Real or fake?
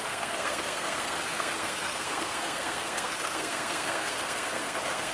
fake